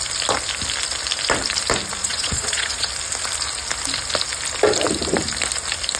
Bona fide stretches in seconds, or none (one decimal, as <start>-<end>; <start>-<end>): 0.0-2.0; 2.9-6.0